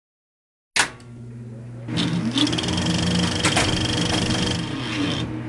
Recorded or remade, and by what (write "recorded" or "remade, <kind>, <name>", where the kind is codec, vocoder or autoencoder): recorded